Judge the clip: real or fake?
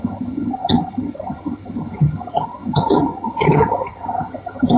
fake